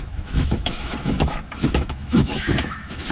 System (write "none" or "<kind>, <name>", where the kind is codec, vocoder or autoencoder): autoencoder, DAC-VAE